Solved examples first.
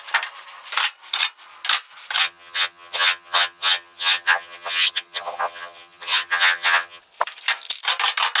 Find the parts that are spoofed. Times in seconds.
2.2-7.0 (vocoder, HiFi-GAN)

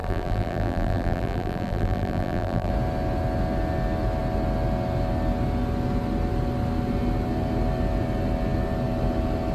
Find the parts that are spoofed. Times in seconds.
0.0-2.7 (vocoder, BigVGAN v2)

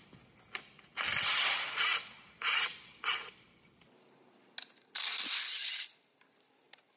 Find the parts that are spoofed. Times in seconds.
1.9-4.1 (vocoder, BigVGAN v2)

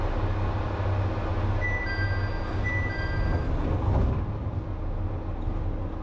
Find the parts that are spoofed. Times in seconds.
none

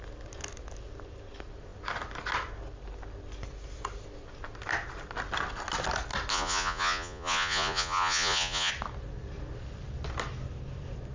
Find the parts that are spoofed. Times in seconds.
6.3-8.7 (vocoder, Vocos)

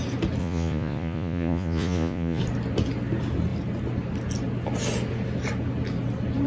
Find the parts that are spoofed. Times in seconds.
0.4-2.4 (vocoder, Vocos)

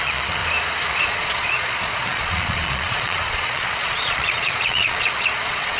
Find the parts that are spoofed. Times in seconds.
0.0-0.4 (vocoder, Vocos); 1.0-5.8

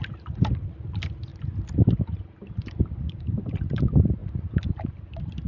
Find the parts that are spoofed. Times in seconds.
0.0-1.3 (vocoder, BigVGAN v2); 2.0-4.2; 4.7-5.5